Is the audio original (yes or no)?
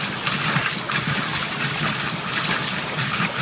yes